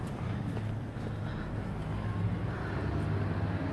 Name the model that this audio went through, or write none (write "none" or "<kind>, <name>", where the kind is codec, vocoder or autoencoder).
none